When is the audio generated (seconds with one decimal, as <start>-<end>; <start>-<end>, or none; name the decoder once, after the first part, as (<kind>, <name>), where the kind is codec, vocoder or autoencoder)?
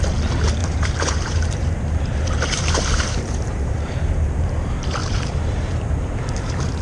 0.6-4.5 (vocoder, BigVGAN v2); 5.0-6.8